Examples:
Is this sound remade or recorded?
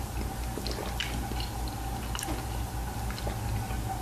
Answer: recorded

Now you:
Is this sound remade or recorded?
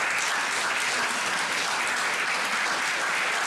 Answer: recorded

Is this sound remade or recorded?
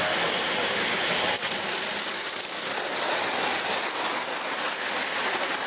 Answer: recorded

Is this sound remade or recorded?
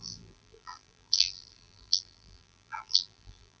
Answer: remade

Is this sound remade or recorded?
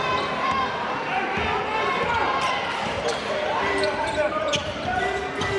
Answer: remade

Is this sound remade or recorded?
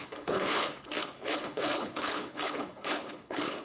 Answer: remade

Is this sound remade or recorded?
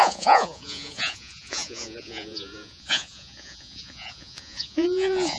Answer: remade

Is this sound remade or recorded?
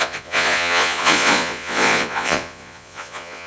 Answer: remade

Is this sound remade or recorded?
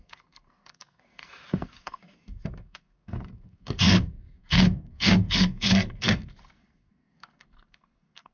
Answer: remade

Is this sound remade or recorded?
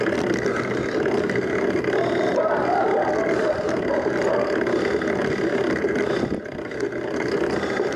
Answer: recorded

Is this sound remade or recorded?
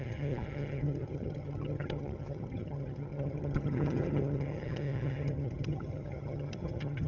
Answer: remade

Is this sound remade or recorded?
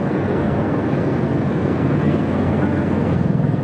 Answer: remade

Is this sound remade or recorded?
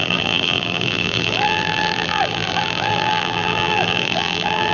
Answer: remade